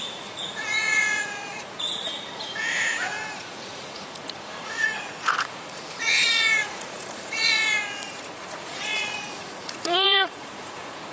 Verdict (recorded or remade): remade